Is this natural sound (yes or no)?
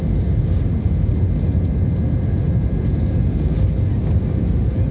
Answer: yes